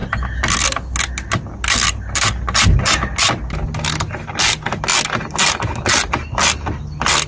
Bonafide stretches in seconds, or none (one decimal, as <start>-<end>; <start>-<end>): 0.0-7.3